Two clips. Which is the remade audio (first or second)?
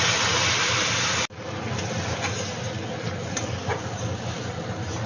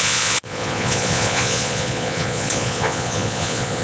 second